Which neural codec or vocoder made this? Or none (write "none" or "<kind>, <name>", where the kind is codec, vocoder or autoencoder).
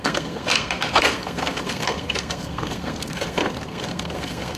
codec, SNAC